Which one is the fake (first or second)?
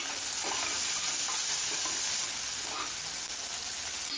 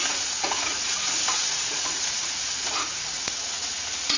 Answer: second